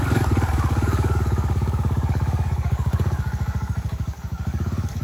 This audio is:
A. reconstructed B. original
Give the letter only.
A